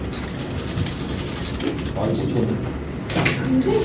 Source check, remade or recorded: recorded